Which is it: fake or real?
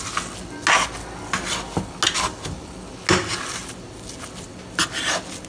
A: real